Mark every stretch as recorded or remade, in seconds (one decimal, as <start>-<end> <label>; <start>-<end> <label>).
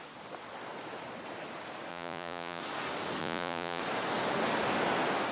0.0-1.9 recorded; 1.9-2.6 remade; 2.6-3.2 recorded; 3.2-3.8 remade; 3.8-5.3 recorded